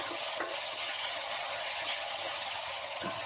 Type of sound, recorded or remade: remade